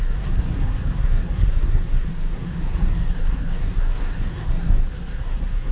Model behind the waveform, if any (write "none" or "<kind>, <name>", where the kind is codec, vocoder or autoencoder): codec, SNAC